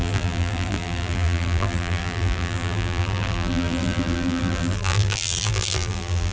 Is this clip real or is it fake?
fake